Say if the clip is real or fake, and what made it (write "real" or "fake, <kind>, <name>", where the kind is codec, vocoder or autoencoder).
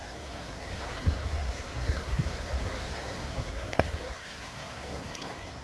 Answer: fake, codec, SNAC